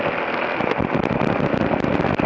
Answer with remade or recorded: recorded